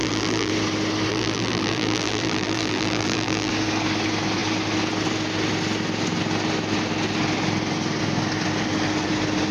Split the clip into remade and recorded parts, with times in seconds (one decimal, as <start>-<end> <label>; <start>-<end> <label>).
0.0-0.5 remade; 0.5-1.1 recorded; 1.1-3.5 remade; 3.5-9.5 recorded